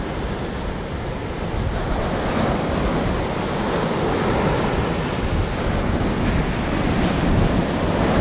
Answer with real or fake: real